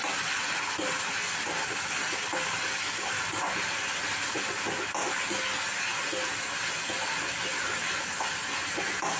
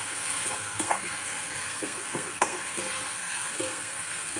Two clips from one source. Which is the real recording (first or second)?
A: first